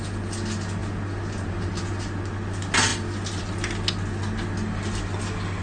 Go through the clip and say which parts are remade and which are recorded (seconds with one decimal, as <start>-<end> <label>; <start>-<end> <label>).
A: 0.0-5.6 recorded